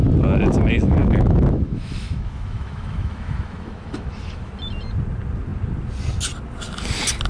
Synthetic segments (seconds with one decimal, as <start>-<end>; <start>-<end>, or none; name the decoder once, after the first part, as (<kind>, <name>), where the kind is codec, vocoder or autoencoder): 1.0-4.5 (autoencoder, DAC-VAE)